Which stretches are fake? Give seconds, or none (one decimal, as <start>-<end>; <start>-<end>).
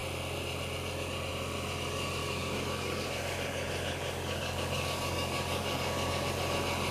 2.2-6.3